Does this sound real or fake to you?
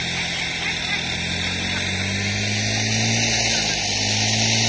real